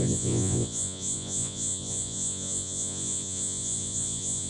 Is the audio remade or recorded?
remade